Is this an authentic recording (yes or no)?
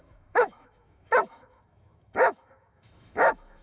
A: no